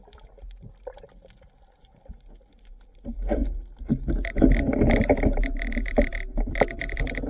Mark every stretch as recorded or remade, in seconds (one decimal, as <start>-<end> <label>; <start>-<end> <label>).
0.0-7.3 recorded